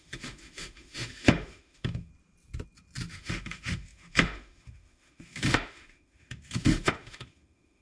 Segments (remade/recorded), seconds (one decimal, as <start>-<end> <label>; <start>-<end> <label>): 0.0-2.1 remade; 2.1-3.1 recorded; 3.1-7.8 remade